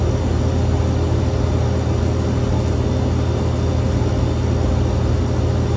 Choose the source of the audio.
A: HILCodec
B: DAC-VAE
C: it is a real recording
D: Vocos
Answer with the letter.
C